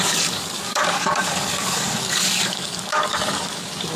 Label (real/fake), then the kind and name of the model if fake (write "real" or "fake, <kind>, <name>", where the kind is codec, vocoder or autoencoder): fake, codec, DAC